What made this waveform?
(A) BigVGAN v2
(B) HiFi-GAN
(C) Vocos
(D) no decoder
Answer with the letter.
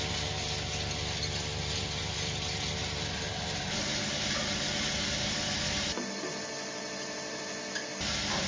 D